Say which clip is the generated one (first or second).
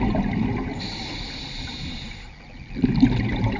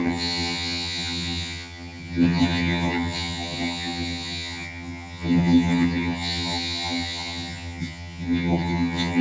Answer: second